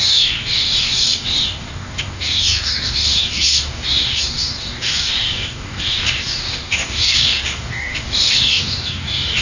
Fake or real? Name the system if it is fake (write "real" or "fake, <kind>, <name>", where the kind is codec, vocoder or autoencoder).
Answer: fake, codec, DAC